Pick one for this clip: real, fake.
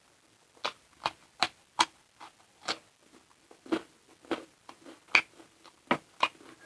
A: real